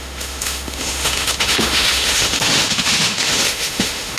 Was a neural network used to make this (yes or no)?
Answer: yes